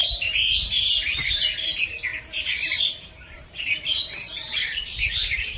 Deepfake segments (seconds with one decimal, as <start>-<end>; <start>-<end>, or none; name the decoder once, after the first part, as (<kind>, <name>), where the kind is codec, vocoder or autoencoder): 0.0-0.9 (vocoder, BigVGAN v2); 2.1-5.6